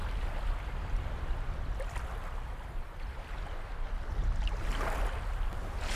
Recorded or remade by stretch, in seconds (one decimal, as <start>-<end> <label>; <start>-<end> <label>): 0.0-3.4 remade; 3.4-5.9 recorded